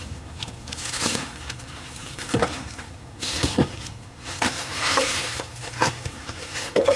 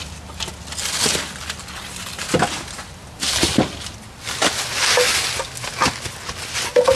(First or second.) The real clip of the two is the second